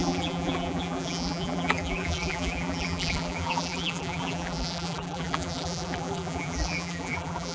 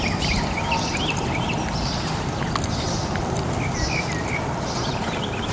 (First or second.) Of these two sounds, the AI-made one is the first